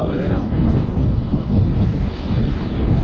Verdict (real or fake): fake